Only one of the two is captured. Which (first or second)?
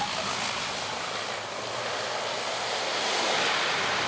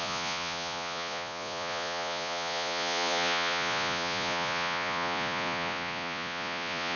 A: first